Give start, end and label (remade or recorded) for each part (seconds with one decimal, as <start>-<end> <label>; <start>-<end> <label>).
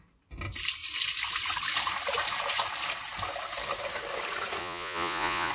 0.0-4.6 recorded; 4.6-5.5 remade